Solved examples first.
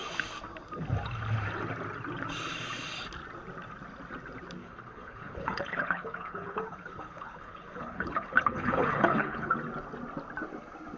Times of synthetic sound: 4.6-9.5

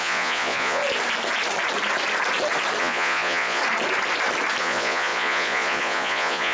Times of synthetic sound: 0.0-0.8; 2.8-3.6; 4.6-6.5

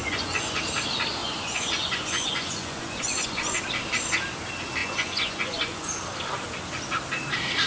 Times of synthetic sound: 0.0-0.6; 1.2-3.5; 4.8-5.9

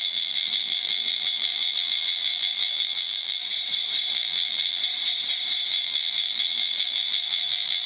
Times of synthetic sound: 0.0-3.5; 4.1-4.8; 5.7-7.9